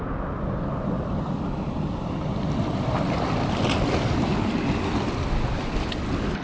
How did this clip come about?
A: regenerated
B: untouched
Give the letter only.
B